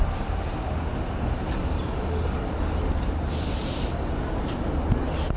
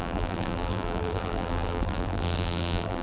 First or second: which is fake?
second